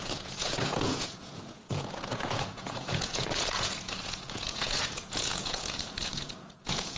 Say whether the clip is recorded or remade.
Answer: remade